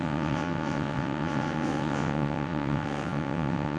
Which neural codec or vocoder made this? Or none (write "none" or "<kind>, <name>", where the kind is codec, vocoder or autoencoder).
vocoder, WaveNeXt